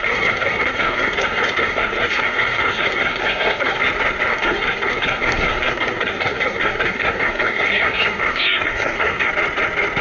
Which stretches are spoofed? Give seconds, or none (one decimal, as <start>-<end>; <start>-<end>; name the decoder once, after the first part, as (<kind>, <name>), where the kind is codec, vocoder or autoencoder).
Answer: 0.0-3.8 (codec, SNAC); 4.3-9.3